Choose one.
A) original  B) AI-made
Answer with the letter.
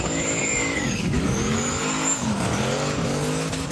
B